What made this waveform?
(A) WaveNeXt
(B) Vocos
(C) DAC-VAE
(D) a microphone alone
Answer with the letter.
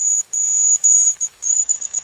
C